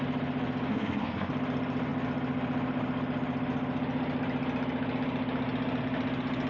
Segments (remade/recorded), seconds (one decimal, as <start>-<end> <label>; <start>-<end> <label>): 0.0-0.7 recorded; 0.7-1.3 remade; 1.3-6.5 recorded